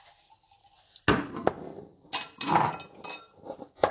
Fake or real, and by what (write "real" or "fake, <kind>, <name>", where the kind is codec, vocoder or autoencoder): real